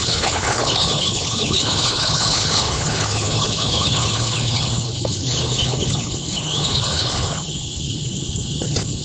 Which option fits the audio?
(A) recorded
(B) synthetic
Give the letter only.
B